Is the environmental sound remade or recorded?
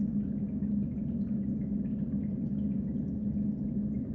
recorded